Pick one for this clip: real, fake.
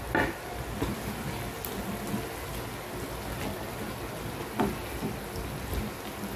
real